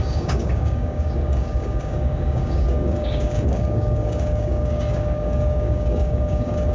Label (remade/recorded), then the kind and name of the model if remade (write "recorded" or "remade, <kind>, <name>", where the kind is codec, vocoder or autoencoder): remade, codec, DAC